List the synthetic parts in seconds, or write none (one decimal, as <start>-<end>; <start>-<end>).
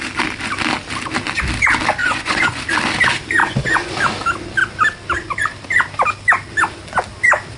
2.0-2.6; 3.4-3.9